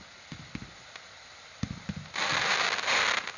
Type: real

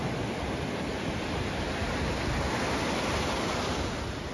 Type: real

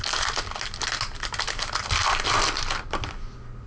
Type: real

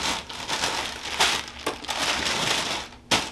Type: real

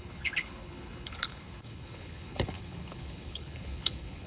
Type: fake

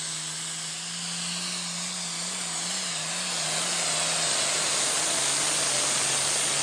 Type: real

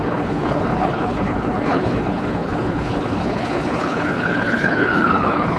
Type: fake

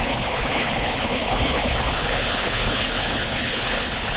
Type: fake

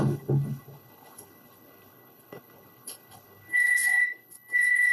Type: fake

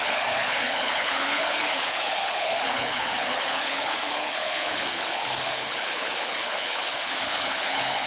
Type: fake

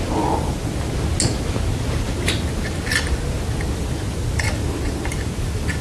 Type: real